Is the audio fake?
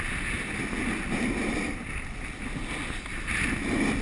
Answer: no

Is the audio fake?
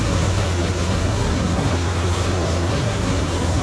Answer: yes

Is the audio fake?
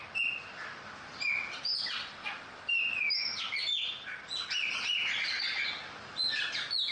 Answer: no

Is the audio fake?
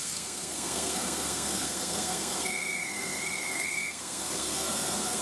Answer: yes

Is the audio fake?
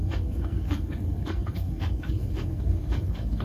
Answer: yes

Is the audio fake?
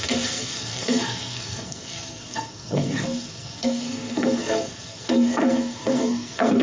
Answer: yes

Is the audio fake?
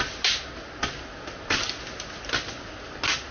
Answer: no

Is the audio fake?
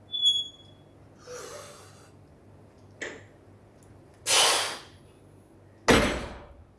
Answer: no